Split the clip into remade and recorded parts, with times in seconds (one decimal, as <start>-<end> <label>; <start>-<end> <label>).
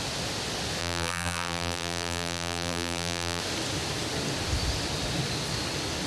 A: 0.0-0.8 recorded; 0.8-3.4 remade; 3.4-6.1 recorded